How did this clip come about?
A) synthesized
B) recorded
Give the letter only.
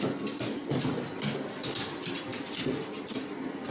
A